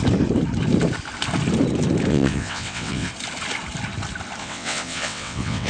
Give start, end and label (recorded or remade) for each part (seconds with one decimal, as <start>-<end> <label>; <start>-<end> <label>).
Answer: 0.0-2.1 recorded; 2.1-3.1 remade; 3.1-4.4 recorded; 4.4-5.7 remade